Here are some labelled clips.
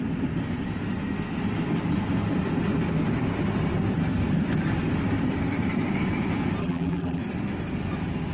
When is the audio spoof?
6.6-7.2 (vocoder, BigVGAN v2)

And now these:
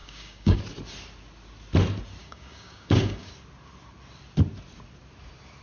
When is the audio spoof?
0.0-0.6 (codec, DAC); 2.2-3.3

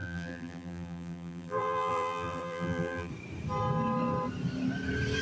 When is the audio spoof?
0.0-3.1 (vocoder, BigVGAN v2)

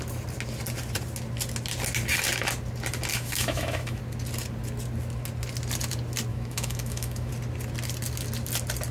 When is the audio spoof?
3.1-4.0 (autoencoder, DAC-VAE); 6.3-7.3

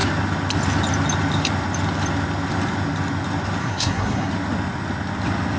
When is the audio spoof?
3.6-4.3 (codec, SNAC)

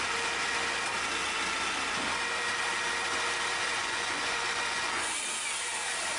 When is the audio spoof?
3.8-5.2 (vocoder, Vocos)

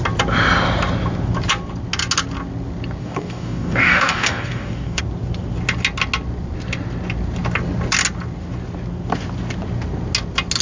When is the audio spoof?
3.0-5.0 (codec, DAC)

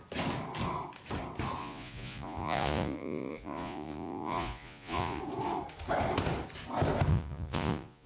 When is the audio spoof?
1.6-5.2 (vocoder, Vocos); 7.1-8.1